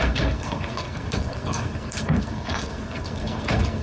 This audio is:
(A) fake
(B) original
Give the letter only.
A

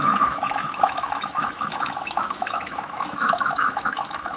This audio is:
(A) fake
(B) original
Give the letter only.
A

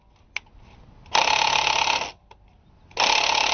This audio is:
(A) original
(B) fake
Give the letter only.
A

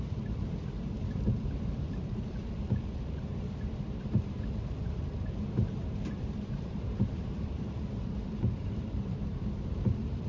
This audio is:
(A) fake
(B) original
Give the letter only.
A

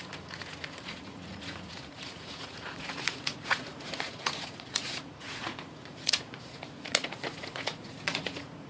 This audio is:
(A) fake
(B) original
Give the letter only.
A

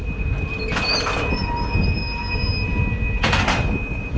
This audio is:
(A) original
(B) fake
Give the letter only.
A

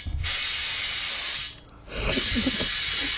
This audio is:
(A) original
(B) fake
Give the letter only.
A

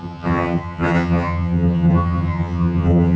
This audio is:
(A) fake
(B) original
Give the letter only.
A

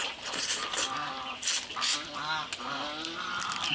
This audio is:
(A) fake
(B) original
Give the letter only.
B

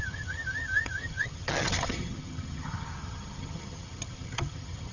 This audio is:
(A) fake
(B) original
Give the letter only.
A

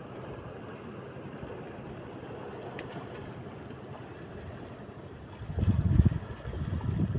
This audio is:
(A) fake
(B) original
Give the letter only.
B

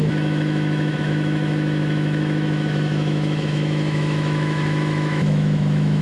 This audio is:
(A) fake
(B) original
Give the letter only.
A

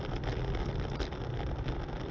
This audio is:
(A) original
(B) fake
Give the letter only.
A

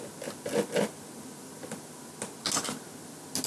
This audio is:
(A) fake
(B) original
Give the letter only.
B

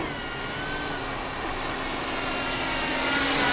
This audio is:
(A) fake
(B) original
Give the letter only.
B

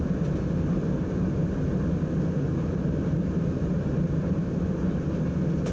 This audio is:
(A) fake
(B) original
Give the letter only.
B